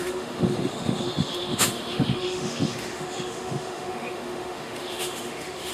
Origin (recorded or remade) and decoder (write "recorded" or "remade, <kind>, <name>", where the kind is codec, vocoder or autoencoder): remade, autoencoder, DAC-VAE